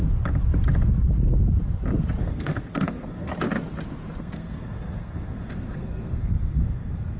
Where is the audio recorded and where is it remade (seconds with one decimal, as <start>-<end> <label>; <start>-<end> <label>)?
0.0-2.2 recorded; 2.2-3.3 remade; 3.3-4.2 recorded; 4.2-7.2 remade